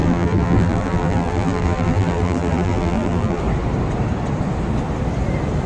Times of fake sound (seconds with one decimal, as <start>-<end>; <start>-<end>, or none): 0.0-3.4